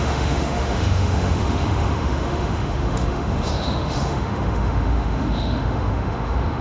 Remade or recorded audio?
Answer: remade